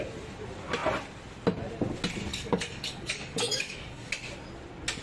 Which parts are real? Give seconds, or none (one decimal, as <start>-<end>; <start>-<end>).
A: 0.0-2.3; 4.1-5.0